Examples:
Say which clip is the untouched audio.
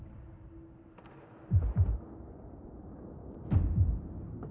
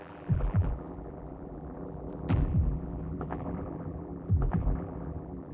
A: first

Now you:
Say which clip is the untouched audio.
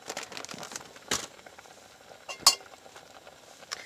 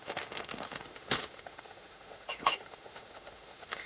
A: first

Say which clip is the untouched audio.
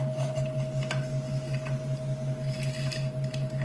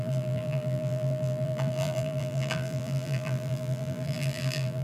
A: first